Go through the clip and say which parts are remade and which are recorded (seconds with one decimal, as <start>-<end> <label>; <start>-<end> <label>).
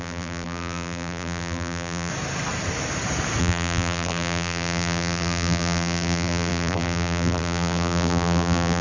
0.0-2.1 remade; 2.1-3.4 recorded; 3.4-8.8 remade